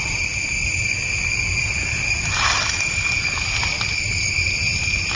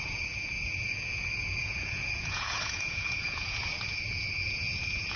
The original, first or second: first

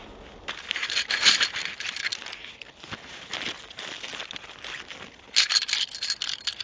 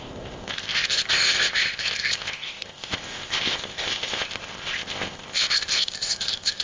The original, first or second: first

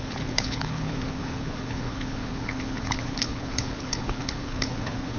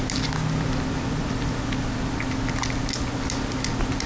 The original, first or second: second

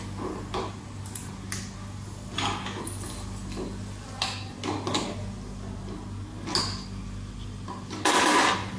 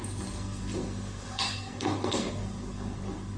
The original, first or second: first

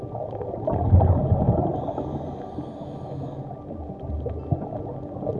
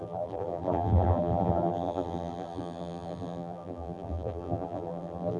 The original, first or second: first